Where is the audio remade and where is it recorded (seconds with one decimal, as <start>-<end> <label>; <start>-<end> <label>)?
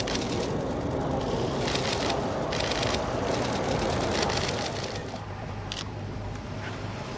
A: 0.0-5.0 recorded; 5.0-6.8 remade; 6.8-7.2 recorded